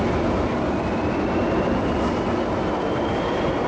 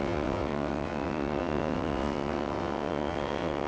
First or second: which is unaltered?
first